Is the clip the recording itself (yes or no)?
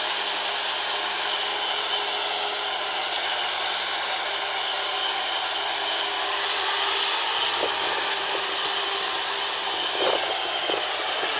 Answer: yes